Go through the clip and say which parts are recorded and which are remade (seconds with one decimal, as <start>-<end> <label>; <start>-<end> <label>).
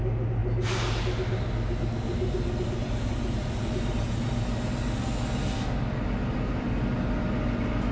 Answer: 0.0-7.9 recorded